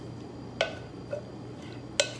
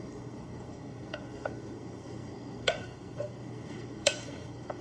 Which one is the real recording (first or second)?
first